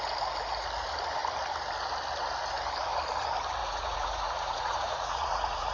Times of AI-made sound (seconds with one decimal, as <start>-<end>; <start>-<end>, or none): 3.6-5.7